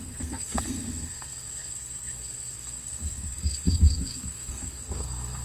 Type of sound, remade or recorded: remade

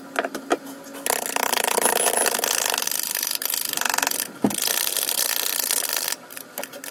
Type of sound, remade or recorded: recorded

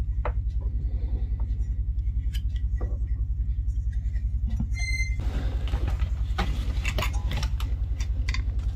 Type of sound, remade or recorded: recorded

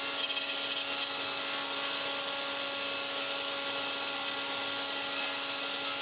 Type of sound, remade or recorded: recorded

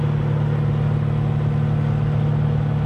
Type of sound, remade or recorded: recorded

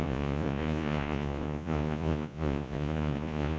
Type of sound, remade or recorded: remade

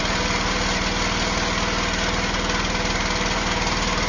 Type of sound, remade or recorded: recorded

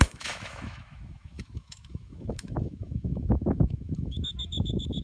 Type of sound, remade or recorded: remade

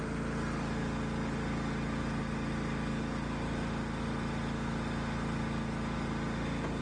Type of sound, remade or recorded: recorded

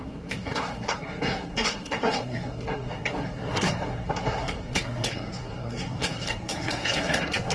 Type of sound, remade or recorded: remade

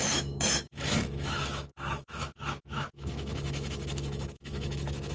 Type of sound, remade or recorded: remade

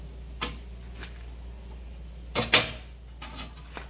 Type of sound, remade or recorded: recorded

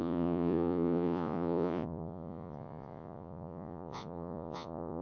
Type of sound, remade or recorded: remade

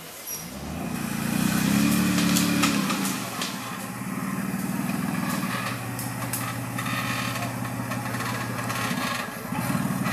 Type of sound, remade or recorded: recorded